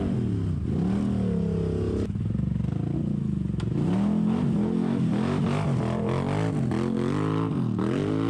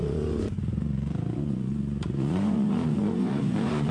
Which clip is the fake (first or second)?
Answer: second